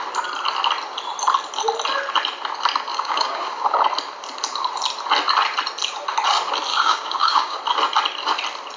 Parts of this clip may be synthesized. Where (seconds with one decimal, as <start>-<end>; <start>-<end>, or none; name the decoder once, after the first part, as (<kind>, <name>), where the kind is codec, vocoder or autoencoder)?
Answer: 2.9-3.6 (codec, DAC); 6.7-7.6